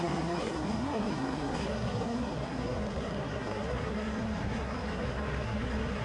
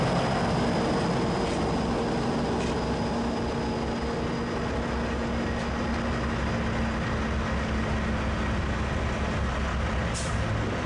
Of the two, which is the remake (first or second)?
first